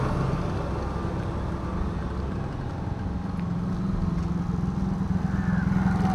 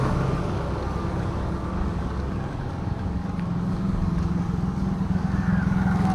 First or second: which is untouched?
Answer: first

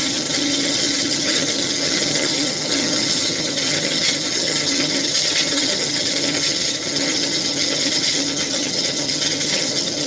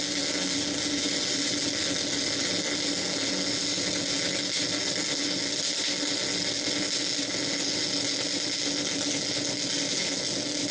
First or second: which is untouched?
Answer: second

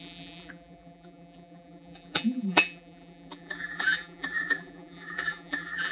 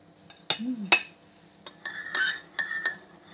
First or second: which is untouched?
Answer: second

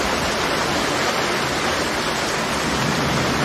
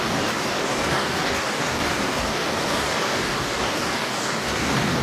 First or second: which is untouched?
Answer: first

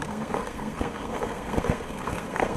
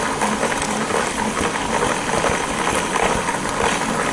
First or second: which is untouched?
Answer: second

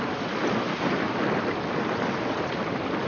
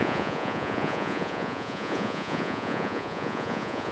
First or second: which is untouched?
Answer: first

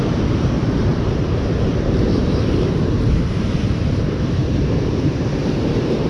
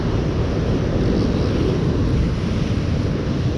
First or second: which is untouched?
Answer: second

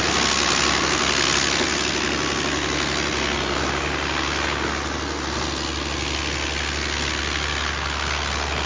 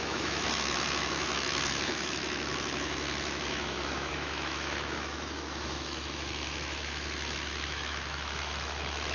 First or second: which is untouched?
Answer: first